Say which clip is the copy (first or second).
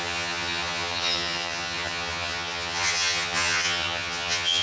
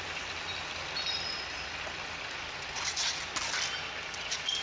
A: first